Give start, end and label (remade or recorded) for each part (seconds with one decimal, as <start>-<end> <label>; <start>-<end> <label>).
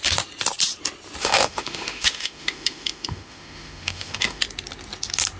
0.0-1.2 recorded; 1.2-4.4 remade; 4.4-5.4 recorded